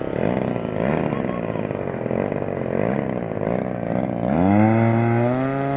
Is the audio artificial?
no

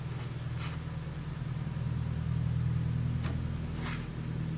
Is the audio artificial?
no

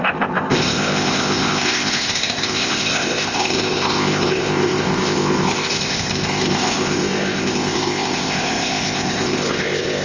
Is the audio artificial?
yes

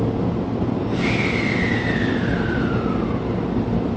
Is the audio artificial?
no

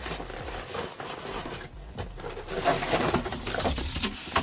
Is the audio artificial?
no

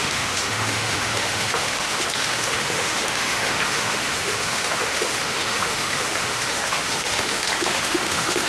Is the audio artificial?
yes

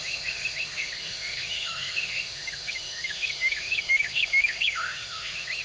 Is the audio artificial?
yes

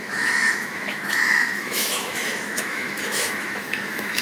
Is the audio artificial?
yes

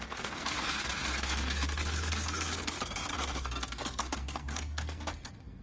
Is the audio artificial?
yes